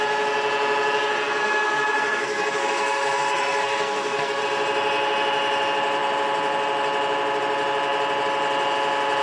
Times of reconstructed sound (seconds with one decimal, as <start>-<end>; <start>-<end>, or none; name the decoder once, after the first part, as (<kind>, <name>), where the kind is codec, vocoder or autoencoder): 1.4-4.4 (codec, SNAC)